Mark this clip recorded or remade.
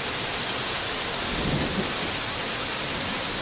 recorded